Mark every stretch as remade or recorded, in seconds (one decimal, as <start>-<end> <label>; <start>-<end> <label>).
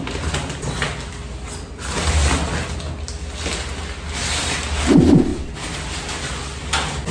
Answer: 0.0-7.1 recorded